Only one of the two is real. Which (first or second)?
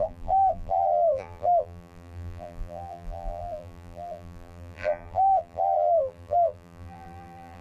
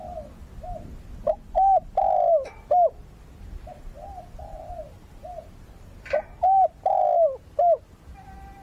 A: second